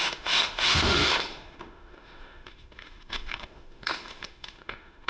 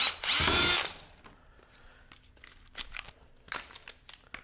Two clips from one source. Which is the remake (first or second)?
first